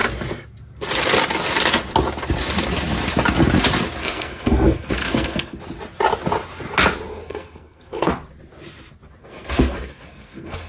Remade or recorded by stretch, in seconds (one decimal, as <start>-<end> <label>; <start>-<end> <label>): 0.0-4.0 recorded; 4.0-5.6 remade; 5.6-7.1 recorded; 7.1-8.1 remade; 8.1-9.2 recorded; 9.2-10.7 remade